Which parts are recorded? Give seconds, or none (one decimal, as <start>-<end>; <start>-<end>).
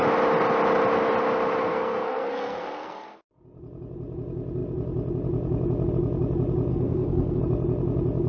0.0-1.7; 3.2-6.7; 7.4-8.3